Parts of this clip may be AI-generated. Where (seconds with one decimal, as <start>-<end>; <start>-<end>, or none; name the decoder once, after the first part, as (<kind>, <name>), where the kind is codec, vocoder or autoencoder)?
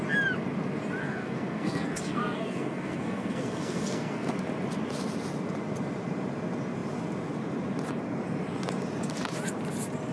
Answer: 1.0-4.3 (codec, SNAC)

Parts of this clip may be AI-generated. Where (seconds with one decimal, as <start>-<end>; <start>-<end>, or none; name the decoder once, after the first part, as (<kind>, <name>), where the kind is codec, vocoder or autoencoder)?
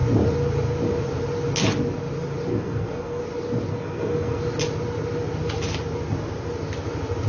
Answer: 2.5-3.2 (codec, SNAC); 3.7-4.4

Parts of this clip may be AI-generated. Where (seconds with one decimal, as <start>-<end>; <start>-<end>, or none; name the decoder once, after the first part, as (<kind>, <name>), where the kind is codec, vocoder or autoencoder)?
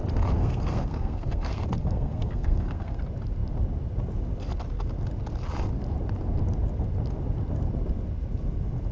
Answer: 0.4-3.0 (codec, SNAC)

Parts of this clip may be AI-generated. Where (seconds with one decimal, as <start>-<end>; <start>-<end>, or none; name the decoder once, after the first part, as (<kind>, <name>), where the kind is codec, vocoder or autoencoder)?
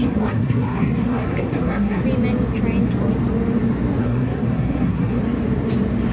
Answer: 0.0-2.0 (codec, SNAC); 4.0-5.2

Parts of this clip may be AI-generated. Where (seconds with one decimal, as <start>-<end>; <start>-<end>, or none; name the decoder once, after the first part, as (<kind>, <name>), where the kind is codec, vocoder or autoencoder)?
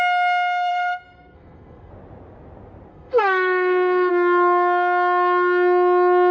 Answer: 0.7-1.9 (codec, SNAC); 2.9-4.1